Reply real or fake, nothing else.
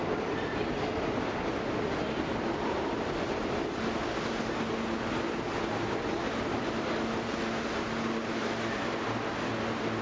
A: real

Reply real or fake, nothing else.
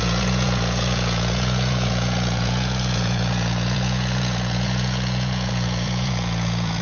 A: fake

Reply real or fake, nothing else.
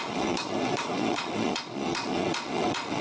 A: fake